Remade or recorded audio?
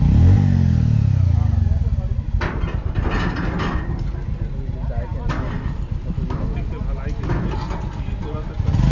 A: recorded